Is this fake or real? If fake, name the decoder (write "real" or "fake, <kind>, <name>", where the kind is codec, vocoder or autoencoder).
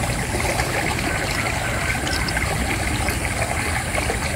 real